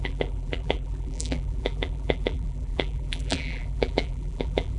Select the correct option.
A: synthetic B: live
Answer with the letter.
A